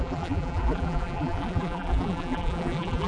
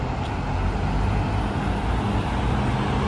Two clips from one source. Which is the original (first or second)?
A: second